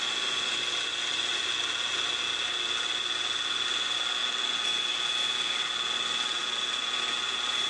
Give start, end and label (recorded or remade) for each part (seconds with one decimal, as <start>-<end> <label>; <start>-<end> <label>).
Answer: 0.0-7.7 recorded